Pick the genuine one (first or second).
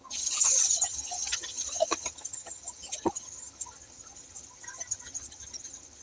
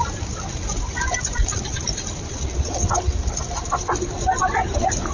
second